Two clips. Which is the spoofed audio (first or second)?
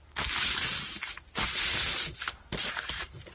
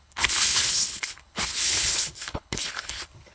second